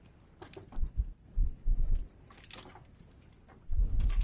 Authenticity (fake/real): real